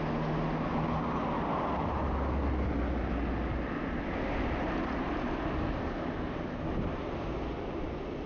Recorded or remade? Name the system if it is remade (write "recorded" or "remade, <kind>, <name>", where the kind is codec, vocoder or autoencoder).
recorded